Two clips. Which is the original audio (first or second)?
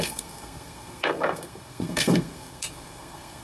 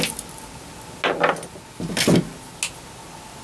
second